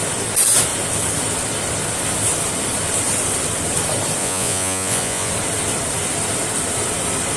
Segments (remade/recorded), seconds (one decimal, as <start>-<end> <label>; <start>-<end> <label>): 0.0-4.2 recorded; 4.2-5.3 remade; 5.3-7.4 recorded